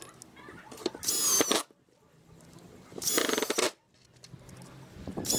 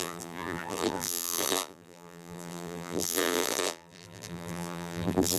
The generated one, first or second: second